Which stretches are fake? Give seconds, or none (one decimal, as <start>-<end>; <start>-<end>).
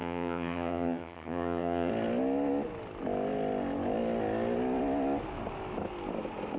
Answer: 0.0-1.9